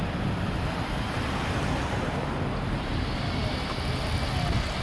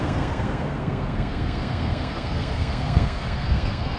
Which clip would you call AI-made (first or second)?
second